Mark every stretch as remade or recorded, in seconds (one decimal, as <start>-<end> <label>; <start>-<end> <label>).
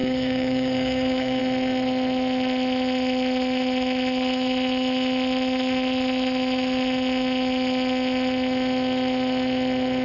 0.0-1.4 remade; 1.4-10.0 recorded